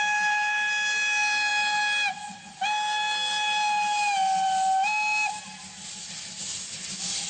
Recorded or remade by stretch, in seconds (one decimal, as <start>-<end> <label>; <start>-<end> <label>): 0.0-7.3 recorded